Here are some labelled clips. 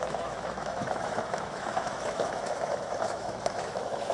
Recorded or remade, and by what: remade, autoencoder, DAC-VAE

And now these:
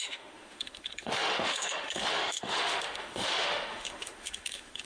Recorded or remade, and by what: remade, autoencoder, DAC-VAE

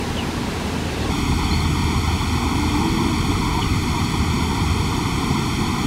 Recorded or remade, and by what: recorded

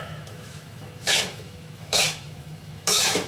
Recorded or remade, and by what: remade, autoencoder, DAC-VAE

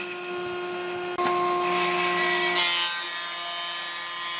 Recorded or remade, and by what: recorded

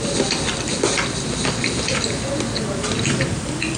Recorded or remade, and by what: recorded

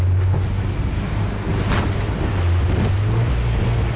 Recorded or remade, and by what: recorded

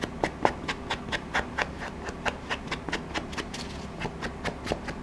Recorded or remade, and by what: recorded